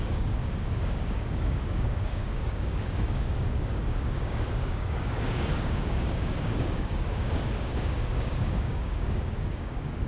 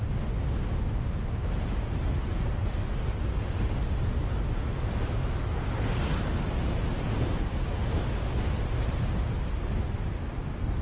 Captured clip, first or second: second